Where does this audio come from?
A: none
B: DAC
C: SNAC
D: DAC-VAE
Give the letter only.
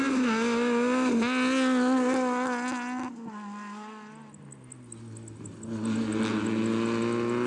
A